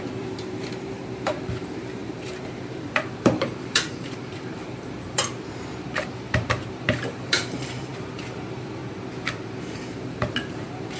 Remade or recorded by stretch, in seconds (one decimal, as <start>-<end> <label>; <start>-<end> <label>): 0.0-8.8 remade; 8.8-9.6 recorded; 9.6-11.0 remade